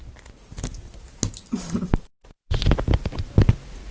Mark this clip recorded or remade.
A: recorded